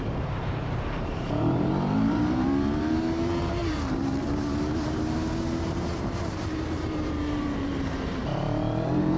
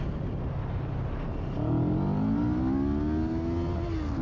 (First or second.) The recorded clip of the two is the second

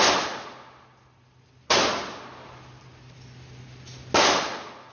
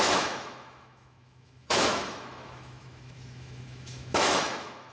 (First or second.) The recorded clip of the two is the first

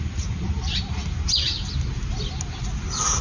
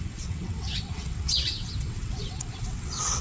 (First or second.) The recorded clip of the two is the first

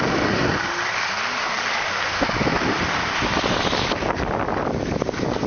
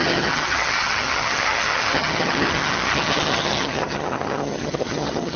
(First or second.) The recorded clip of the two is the first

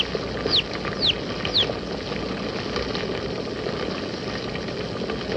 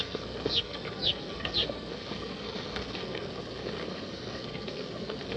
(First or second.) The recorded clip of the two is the first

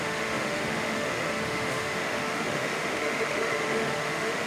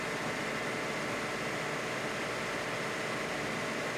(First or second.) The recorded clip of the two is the second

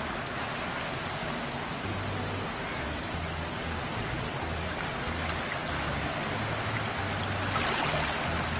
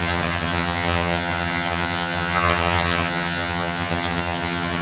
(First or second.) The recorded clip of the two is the first